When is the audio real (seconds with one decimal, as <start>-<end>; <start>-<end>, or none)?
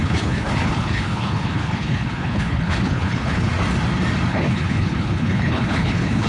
3.5-4.3